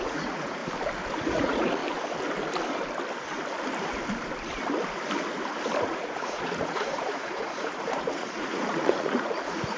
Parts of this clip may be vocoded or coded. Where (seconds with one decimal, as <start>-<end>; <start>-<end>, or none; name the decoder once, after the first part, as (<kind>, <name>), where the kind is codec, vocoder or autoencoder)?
0.0-0.6 (vocoder, Vocos); 1.1-1.8; 5.8-9.8